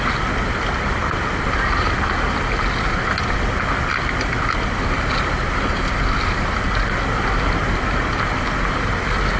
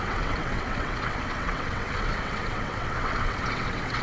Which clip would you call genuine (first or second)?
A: first